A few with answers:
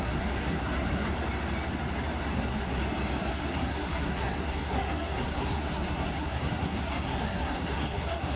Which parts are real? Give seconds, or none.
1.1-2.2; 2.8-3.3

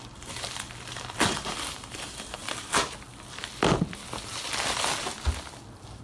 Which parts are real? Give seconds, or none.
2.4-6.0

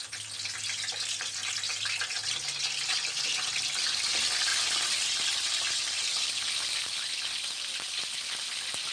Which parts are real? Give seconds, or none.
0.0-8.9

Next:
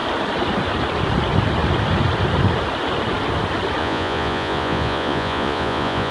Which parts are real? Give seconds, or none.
0.0-3.8

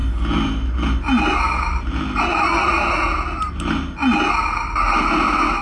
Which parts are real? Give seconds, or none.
0.0-5.6

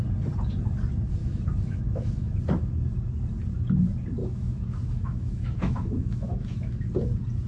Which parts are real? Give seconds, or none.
0.0-1.2; 2.4-4.2; 6.9-7.5

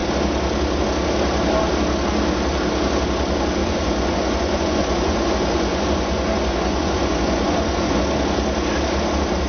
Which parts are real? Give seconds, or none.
0.0-3.6; 8.0-9.5

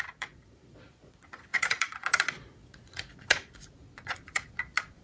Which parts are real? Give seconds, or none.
none